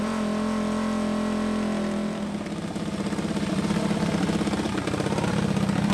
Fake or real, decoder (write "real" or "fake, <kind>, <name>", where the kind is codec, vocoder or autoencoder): real